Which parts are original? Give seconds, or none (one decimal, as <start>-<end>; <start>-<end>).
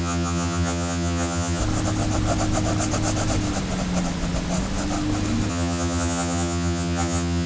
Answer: 1.6-5.5